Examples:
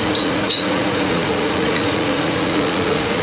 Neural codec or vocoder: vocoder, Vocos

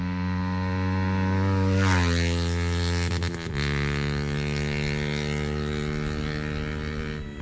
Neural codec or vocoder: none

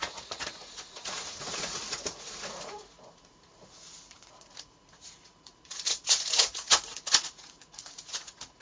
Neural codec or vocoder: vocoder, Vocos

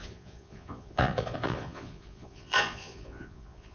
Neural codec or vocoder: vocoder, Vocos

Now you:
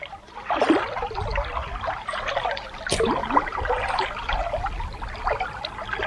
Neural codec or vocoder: none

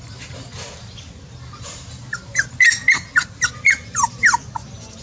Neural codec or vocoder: none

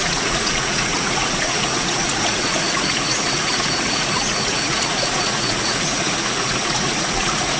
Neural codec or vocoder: vocoder, Vocos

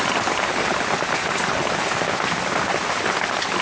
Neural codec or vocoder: none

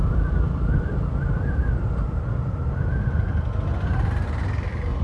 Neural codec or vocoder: none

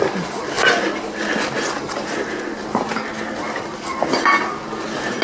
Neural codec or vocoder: none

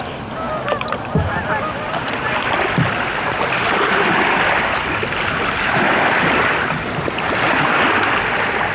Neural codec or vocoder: none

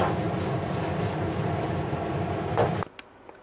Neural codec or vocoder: none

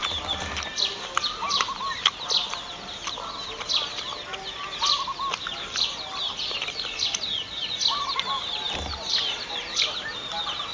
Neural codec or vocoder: none